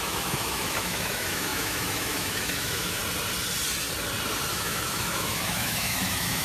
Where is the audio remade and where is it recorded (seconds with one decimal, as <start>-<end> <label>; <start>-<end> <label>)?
0.0-3.0 remade; 3.0-4.5 recorded; 4.5-6.4 remade